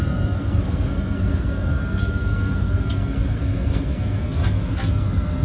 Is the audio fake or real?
fake